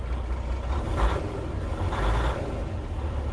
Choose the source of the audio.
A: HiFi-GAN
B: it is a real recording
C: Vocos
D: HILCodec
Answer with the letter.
B